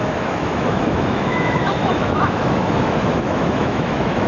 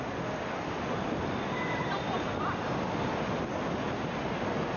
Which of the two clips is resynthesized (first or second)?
first